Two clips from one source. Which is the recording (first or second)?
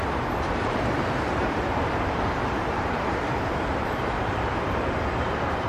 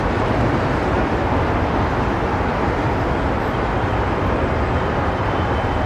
second